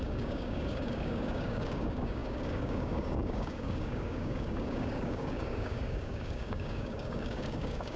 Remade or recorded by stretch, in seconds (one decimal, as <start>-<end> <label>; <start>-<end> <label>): 0.0-8.0 remade